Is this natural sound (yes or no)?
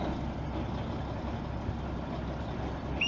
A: yes